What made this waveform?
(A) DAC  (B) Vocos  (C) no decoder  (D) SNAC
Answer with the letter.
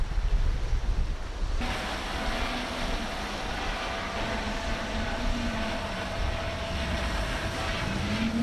C